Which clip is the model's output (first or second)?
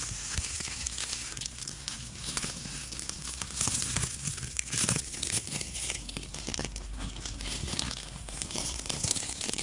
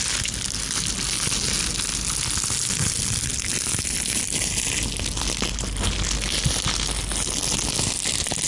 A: first